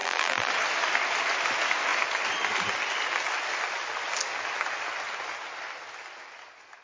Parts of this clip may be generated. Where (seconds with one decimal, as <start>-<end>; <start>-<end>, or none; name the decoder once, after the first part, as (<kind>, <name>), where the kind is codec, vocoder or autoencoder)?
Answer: 0.0-0.5 (vocoder, BigVGAN v2)